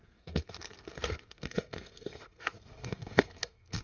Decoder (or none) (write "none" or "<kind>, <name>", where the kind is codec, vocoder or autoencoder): codec, SNAC